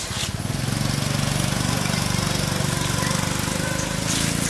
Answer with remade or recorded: recorded